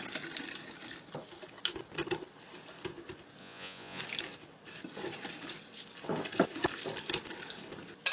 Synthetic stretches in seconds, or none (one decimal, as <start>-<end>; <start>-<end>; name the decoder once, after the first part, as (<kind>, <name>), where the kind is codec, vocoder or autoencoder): 3.4-4.0 (vocoder, Vocos)